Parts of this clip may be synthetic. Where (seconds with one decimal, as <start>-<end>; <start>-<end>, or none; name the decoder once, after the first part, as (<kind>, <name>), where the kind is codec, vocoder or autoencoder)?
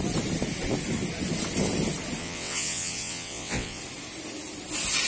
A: 2.2-3.8 (vocoder, WaveNeXt)